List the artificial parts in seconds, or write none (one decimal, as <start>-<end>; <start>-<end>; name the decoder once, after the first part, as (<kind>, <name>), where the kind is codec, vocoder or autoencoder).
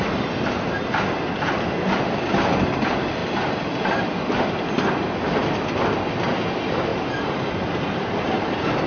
none